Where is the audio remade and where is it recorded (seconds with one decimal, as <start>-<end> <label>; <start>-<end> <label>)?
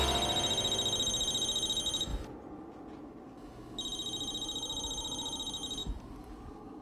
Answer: 0.0-6.8 recorded